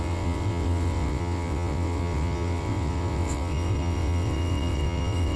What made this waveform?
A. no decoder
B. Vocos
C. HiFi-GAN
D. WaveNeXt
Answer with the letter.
D